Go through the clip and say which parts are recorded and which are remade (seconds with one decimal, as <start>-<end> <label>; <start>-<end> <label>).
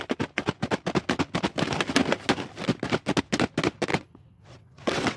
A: 0.0-3.9 recorded; 3.9-5.2 remade